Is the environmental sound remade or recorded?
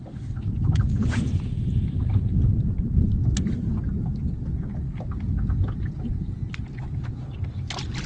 recorded